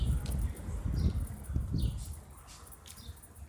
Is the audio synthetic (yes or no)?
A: no